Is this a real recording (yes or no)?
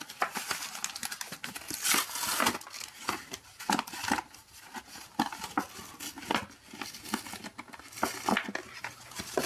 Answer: yes